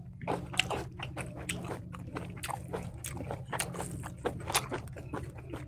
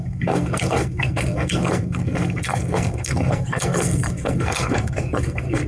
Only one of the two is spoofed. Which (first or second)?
second